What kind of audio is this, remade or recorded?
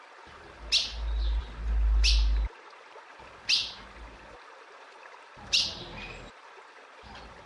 recorded